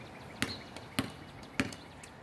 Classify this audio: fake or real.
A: real